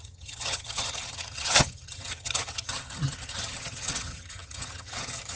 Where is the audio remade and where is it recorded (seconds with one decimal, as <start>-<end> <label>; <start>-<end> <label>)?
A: 0.0-5.4 remade